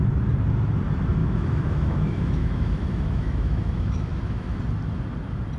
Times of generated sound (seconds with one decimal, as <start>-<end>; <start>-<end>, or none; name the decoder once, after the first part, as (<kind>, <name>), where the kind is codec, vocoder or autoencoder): 1.2-4.6 (autoencoder, DAC-VAE)